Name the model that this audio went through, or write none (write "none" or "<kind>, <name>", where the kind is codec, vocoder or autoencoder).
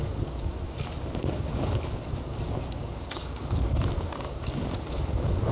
codec, DAC